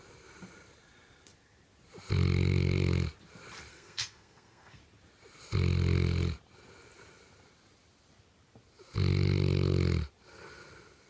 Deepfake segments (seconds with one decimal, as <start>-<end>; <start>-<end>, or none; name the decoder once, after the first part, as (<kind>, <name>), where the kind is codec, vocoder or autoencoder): 3.7-4.8 (codec, SNAC)